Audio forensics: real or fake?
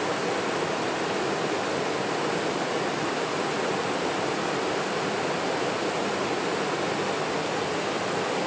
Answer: real